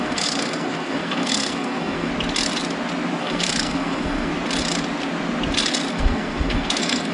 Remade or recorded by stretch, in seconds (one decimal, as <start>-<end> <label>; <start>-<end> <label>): 0.0-2.1 remade; 2.1-3.2 recorded; 3.2-4.3 remade; 4.3-5.9 recorded; 5.9-7.1 remade